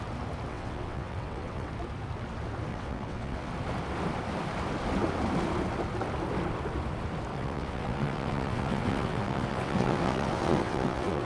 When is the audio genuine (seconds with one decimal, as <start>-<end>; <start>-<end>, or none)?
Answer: 0.0-0.5; 1.7-2.7; 3.5-7.3